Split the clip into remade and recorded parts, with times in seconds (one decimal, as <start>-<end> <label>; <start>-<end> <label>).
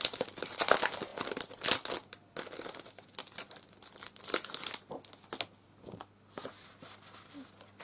0.0-7.8 recorded